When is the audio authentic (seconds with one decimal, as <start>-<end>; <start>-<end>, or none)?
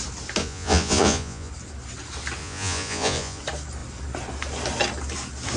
0.0-0.4; 1.5-2.4; 3.4-5.6